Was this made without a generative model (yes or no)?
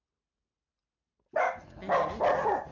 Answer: yes